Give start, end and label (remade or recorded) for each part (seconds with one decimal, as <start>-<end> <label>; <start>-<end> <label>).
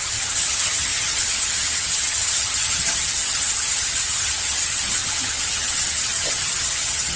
0.0-7.2 remade